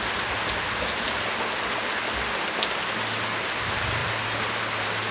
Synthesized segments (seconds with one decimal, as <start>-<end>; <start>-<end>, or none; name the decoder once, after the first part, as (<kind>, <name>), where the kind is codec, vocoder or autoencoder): none